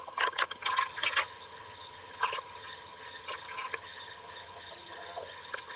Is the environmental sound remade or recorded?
remade